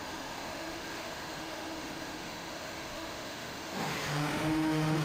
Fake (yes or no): yes